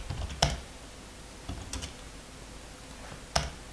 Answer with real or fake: real